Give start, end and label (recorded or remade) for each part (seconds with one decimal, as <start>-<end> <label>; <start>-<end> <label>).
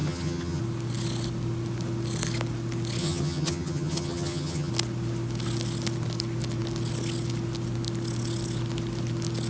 0.0-0.6 remade; 0.6-3.0 recorded; 3.0-4.7 remade; 4.7-9.5 recorded